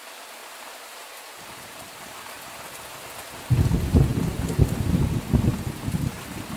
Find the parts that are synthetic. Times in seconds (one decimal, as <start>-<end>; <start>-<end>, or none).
0.4-2.3